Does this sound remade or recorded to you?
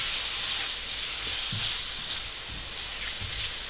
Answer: recorded